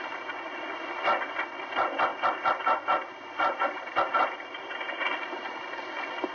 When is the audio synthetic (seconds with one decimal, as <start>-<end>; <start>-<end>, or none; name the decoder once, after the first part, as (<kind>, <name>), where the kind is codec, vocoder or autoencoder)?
0.0-6.3 (vocoder, BigVGAN v2)